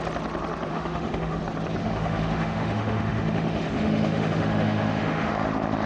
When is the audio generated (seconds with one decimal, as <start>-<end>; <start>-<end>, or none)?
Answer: 0.7-1.4; 1.8-5.3